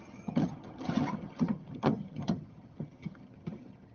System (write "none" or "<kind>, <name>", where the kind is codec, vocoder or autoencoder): vocoder, HiFi-GAN